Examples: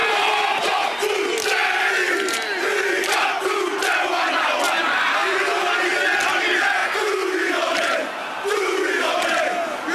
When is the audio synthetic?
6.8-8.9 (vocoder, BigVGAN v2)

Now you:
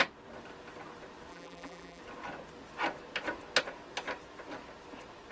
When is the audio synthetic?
1.3-2.0 (vocoder, BigVGAN v2)

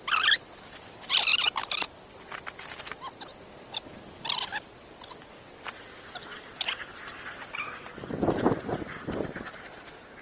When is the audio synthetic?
1.3-2.1 (vocoder, BigVGAN v2)